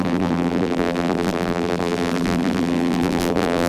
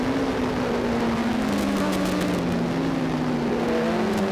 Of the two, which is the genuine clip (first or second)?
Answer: second